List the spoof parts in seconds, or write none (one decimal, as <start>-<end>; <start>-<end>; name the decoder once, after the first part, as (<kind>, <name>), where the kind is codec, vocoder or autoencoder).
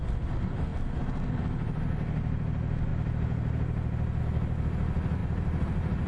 5.2-6.1 (vocoder, BigVGAN v2)